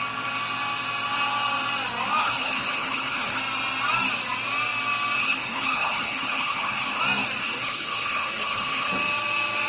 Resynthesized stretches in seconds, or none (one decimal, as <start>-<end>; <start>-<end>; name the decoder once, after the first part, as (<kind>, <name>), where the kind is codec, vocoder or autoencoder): 2.2-3.4 (codec, HILCodec); 5.2-7.0; 7.4-8.9